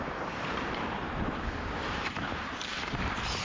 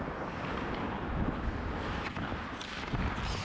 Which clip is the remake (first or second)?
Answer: first